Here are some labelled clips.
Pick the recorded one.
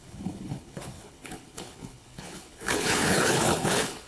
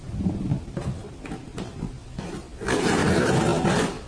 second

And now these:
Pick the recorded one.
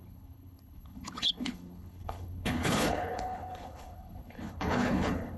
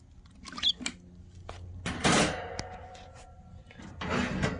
second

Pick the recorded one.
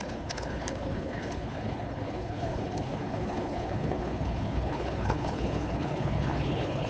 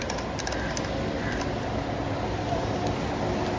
second